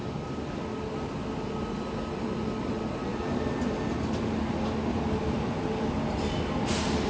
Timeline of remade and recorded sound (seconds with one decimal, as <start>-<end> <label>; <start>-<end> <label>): 0.0-7.1 recorded